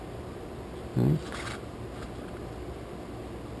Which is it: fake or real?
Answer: real